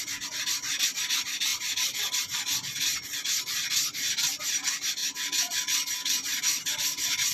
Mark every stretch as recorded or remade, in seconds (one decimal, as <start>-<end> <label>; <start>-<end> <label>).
0.0-7.3 recorded